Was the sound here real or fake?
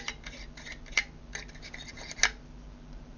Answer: real